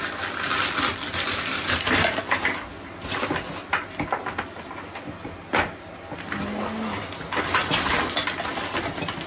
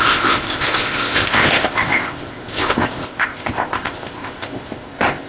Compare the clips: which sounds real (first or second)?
first